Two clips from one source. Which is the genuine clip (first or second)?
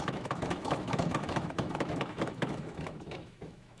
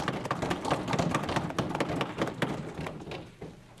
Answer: second